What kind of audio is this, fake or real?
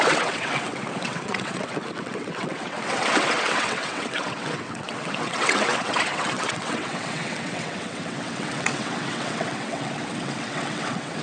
fake